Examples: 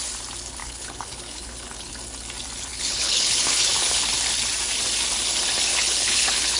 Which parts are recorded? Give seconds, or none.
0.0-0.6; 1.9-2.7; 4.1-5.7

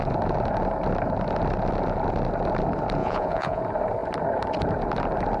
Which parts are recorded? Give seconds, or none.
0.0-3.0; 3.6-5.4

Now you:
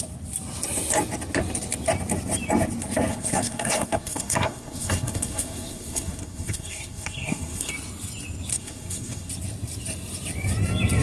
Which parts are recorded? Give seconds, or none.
0.0-3.1; 7.7-8.5; 9.3-11.0